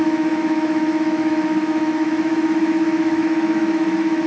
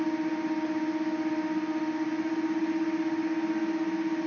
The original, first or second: second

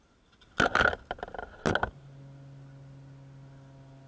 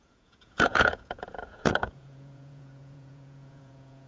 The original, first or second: first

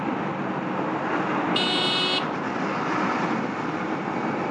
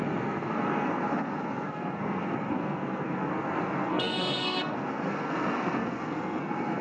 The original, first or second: first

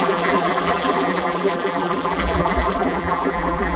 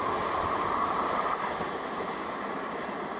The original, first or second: second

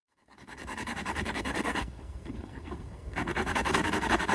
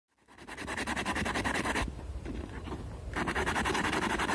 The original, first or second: second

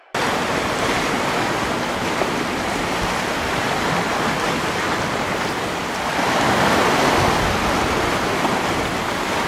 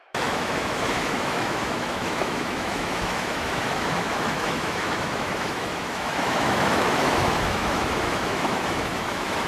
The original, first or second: first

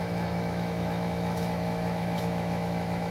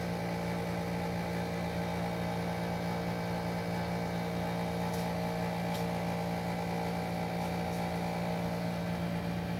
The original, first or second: second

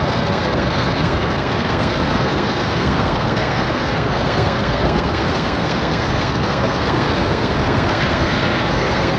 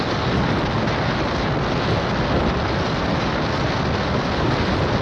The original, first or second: second